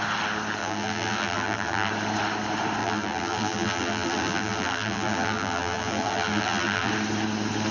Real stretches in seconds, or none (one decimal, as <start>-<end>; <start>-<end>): 0.0-0.6; 1.9-2.8; 6.9-7.7